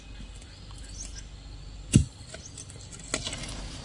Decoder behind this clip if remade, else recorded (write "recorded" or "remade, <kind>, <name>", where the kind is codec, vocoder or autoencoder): recorded